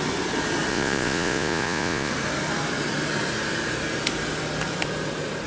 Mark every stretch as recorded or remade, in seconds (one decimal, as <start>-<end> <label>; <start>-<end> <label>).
0.0-0.7 recorded; 0.7-2.1 remade; 2.1-5.5 recorded